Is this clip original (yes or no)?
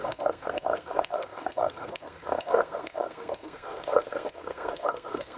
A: no